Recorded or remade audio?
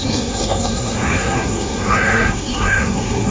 remade